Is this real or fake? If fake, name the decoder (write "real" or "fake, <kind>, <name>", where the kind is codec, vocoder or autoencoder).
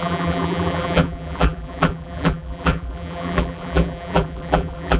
fake, vocoder, BigVGAN v2